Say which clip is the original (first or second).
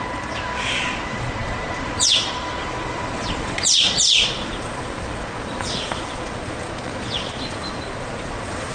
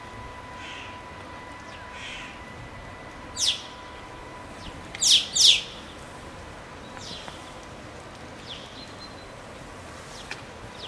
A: second